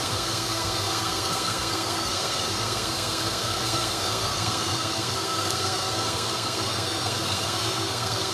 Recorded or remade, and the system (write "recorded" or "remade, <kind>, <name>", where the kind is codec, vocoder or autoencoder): remade, codec, SNAC